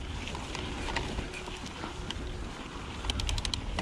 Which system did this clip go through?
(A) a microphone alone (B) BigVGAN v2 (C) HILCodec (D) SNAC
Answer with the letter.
A